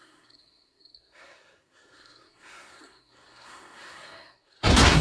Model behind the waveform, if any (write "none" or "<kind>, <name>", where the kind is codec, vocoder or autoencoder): codec, SNAC